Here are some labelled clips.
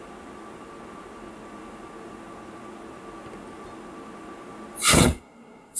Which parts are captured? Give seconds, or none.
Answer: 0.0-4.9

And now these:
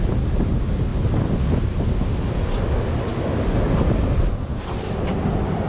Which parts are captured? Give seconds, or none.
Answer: 0.0-5.7